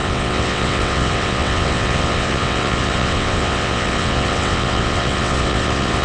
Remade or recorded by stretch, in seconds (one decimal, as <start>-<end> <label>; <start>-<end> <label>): 0.0-6.0 remade